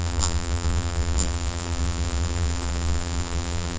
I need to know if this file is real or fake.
fake